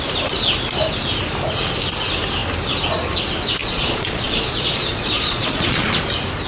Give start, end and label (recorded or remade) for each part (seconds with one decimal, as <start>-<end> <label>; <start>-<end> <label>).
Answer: 0.0-3.6 recorded; 3.6-5.9 remade; 5.9-6.5 recorded